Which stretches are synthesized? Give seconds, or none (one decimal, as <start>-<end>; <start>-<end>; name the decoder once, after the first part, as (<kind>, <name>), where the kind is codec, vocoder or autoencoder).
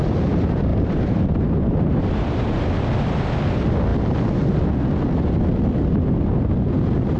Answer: 0.7-2.0 (vocoder, BigVGAN v2)